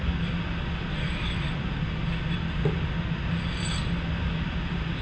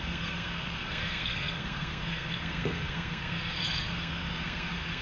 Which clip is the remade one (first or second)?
second